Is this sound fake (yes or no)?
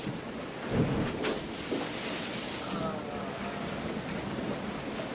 no